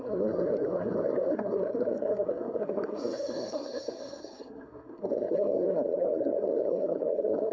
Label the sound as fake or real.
fake